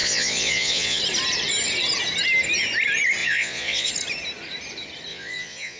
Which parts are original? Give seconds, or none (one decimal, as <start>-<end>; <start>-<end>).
1.0-3.2; 3.9-5.1